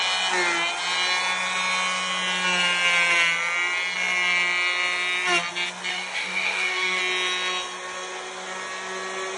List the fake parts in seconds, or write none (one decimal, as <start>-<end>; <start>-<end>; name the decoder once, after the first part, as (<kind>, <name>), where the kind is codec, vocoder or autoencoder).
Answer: 5.9-7.0 (codec, DAC)